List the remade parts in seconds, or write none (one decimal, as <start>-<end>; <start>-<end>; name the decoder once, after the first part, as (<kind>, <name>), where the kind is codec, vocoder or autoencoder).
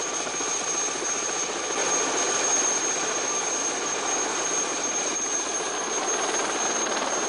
none